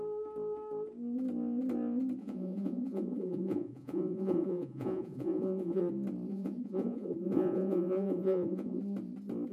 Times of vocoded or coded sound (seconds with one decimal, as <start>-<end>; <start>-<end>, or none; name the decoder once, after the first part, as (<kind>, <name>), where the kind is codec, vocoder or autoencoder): 2.2-5.8 (vocoder, Vocos); 6.3-8.8